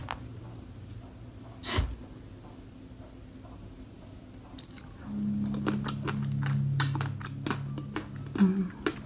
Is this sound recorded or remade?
recorded